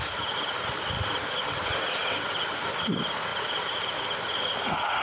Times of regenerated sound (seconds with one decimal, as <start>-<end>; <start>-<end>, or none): none